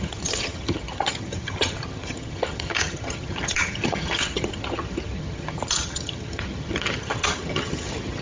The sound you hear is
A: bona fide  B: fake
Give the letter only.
B